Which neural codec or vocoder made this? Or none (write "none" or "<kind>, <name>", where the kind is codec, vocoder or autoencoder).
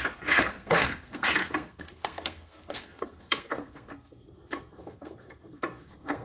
codec, SNAC